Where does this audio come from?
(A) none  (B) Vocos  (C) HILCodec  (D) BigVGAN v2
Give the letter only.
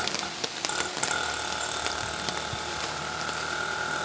A